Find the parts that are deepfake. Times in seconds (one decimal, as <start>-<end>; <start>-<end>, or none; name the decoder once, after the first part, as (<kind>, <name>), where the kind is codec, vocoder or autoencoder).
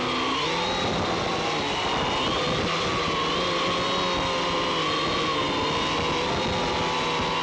none